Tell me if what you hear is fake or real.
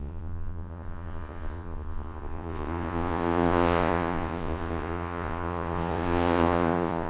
fake